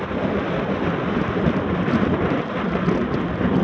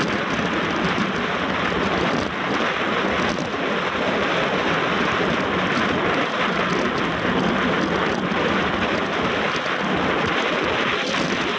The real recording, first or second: second